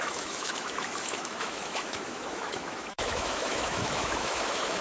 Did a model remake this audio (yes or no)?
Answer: yes